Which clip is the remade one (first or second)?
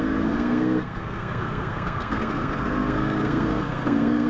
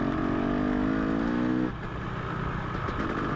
first